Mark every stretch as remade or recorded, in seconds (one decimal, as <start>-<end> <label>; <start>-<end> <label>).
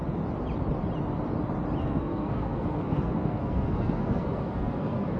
0.0-1.8 recorded; 1.8-5.2 remade